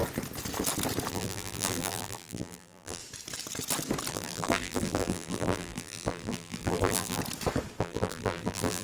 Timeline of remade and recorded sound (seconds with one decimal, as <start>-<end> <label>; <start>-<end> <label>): 0.0-1.1 recorded; 1.1-3.0 remade; 3.0-4.1 recorded; 4.1-7.2 remade; 7.2-7.8 recorded; 7.8-8.8 remade